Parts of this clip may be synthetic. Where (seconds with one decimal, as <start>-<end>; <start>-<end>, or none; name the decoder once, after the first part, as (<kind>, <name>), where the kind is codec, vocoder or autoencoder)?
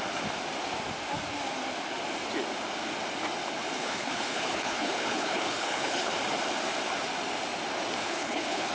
3.8-6.1 (codec, HILCodec); 8.0-8.7